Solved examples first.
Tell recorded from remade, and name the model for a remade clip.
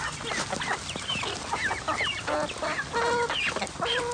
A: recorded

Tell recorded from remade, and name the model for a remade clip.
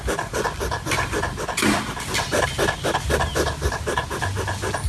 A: recorded